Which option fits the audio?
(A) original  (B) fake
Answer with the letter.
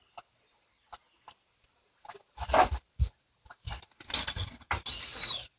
A